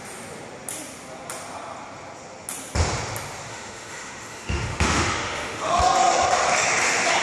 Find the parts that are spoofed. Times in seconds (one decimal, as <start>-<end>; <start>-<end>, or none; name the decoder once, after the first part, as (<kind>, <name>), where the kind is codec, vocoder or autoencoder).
3.5-5.8 (autoencoder, DAC-VAE)